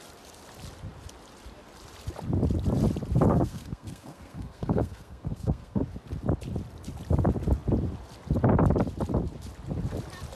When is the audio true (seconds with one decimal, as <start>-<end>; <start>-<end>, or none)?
0.0-3.3; 5.8-10.4